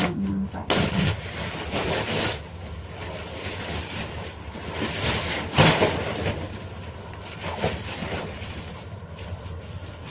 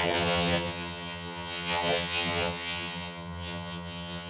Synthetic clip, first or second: second